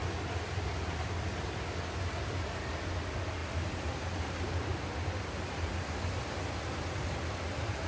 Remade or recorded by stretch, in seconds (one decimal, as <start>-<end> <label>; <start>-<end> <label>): 0.0-7.9 recorded